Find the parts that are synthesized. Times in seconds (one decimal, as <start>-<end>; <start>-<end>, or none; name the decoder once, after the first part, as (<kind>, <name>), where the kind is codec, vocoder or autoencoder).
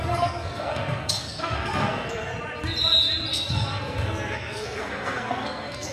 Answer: 0.0-2.3 (codec, SNAC); 3.3-5.9